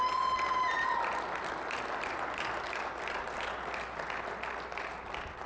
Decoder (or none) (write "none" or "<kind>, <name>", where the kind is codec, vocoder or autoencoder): none